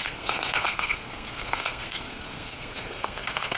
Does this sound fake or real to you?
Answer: fake